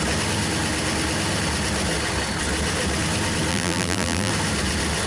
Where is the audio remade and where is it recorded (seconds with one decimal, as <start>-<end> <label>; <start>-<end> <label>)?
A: 0.0-3.5 recorded; 3.5-4.3 remade; 4.3-5.1 recorded